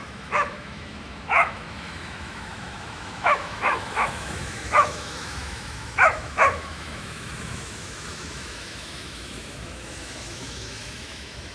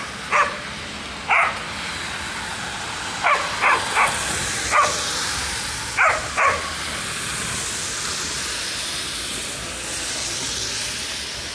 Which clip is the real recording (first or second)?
second